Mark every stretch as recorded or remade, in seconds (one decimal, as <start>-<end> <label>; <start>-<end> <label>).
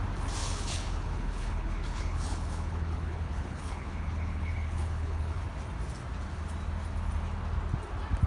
0.0-0.4 recorded; 0.4-5.4 remade; 5.4-8.3 recorded